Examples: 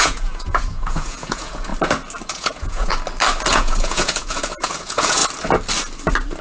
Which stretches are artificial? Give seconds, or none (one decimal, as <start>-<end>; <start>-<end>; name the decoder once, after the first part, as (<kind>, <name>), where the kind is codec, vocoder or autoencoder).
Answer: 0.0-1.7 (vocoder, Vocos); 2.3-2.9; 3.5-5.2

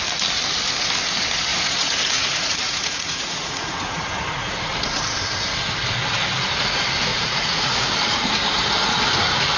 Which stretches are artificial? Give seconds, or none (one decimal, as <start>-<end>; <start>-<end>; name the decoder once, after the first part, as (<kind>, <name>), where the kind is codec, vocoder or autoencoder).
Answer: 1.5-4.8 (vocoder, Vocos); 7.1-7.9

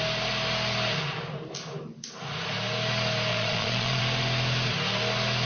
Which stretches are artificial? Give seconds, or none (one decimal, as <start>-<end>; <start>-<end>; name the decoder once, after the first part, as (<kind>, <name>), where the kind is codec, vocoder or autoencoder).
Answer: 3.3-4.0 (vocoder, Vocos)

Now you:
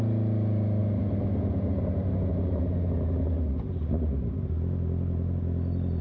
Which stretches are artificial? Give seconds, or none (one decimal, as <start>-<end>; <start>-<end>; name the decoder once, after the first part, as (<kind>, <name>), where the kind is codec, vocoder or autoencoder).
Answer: none

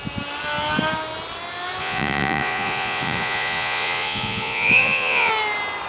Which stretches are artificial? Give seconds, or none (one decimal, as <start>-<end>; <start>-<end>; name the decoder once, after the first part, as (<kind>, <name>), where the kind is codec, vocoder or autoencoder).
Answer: 1.8-5.3 (vocoder, Vocos)